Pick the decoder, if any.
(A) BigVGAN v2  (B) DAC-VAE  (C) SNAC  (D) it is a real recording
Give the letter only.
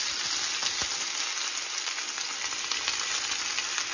D